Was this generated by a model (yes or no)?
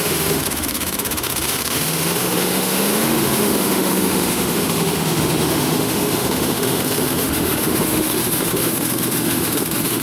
yes